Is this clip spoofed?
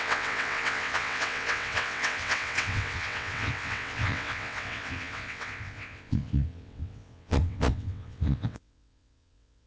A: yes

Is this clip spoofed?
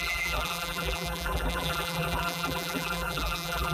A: yes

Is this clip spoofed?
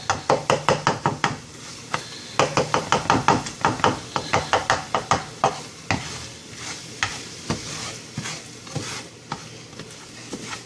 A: no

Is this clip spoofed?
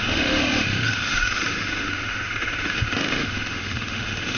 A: yes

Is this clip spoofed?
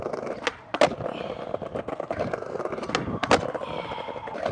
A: no